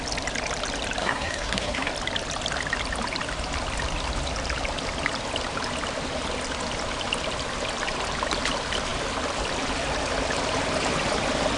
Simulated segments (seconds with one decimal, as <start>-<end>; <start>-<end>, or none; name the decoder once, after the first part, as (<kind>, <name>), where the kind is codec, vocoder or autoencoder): 1.0-1.9 (codec, SNAC)